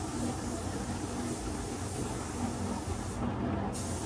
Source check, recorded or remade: recorded